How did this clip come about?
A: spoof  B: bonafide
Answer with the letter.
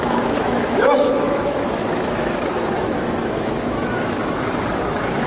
A